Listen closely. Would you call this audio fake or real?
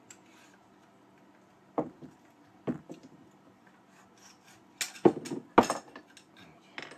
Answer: real